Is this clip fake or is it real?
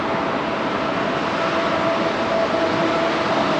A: real